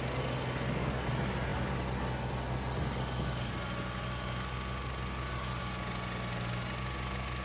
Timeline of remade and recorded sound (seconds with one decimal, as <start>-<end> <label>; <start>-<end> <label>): 0.0-7.4 recorded